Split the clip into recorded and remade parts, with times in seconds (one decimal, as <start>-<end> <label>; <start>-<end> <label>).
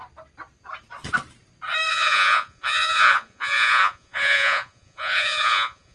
0.0-1.9 recorded; 1.9-5.9 remade